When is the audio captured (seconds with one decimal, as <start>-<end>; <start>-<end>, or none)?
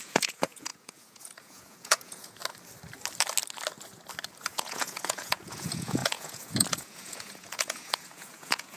2.4-4.4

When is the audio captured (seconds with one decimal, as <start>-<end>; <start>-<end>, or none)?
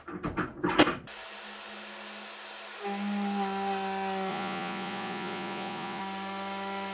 0.0-4.3; 6.0-6.9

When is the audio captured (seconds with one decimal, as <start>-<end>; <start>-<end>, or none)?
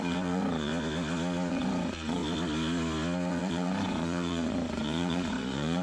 0.7-1.5; 2.2-3.3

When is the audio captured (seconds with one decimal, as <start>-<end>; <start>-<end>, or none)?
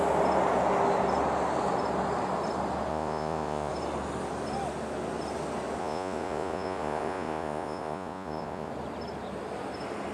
0.0-2.9; 3.7-5.8; 8.7-10.1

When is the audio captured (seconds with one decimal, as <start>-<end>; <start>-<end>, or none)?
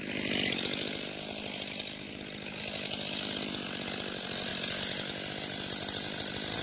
0.0-6.6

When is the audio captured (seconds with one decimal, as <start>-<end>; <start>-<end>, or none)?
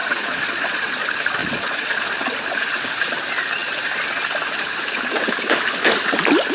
1.0-1.4; 2.0-6.5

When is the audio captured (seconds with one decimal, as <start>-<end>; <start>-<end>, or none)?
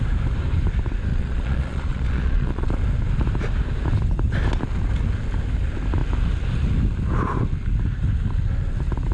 0.0-1.1; 2.7-9.1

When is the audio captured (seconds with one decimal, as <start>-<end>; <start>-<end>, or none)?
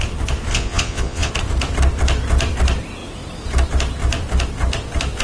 0.0-0.5; 1.3-5.2